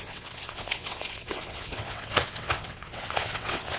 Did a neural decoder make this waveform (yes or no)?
yes